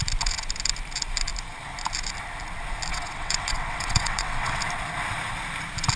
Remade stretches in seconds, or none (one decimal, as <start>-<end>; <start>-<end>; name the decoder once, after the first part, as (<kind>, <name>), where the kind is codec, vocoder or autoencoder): 2.9-4.6 (vocoder, WaveNeXt)